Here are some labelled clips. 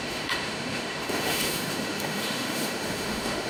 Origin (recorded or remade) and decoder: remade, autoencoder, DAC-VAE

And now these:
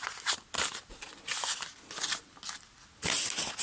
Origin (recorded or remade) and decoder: recorded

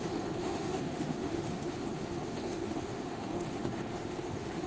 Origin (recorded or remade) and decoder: remade, autoencoder, DAC-VAE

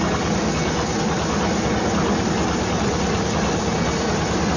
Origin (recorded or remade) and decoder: recorded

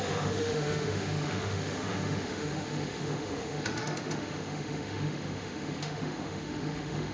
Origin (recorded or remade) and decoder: remade, autoencoder, DAC-VAE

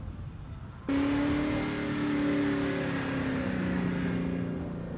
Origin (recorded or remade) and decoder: recorded